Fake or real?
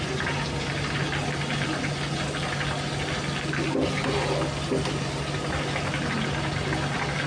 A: real